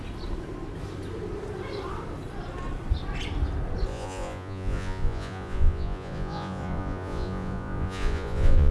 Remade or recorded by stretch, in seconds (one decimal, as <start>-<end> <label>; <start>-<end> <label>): 0.0-3.9 recorded; 3.9-8.7 remade